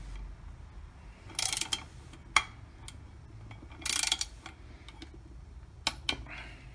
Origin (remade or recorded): recorded